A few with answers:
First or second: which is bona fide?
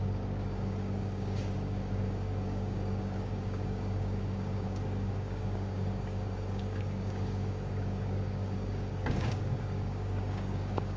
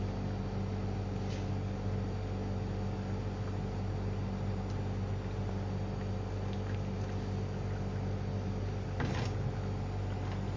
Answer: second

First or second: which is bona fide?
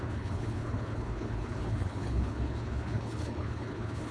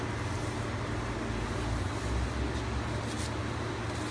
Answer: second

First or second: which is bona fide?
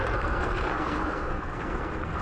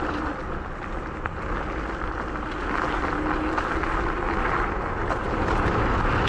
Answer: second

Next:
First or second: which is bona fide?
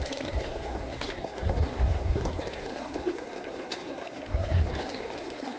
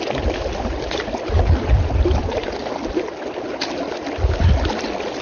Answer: second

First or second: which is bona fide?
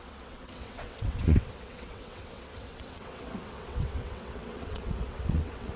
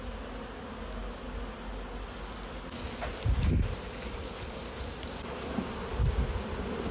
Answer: second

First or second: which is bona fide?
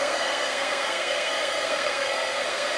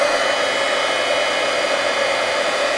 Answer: second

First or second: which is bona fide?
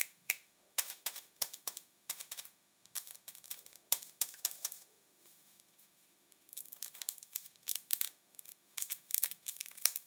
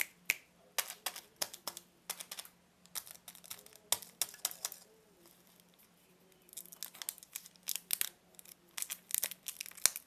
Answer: second